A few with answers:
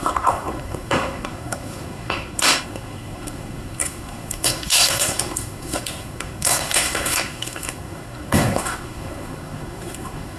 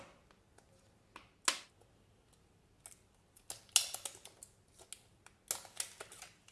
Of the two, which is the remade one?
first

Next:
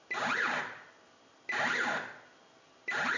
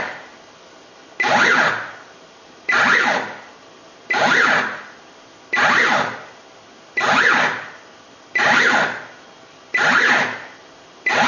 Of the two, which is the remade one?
second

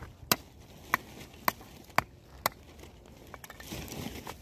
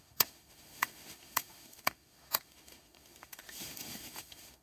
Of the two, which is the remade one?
second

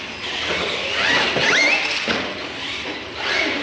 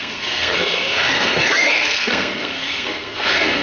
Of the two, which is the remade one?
second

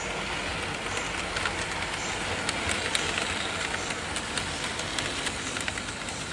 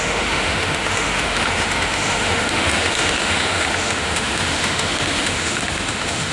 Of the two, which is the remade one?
second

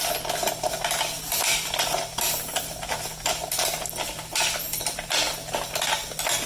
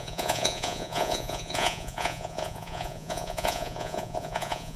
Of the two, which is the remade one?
second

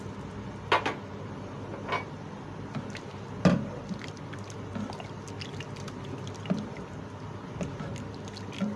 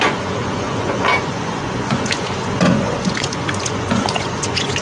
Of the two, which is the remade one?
second